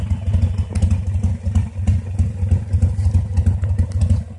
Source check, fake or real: real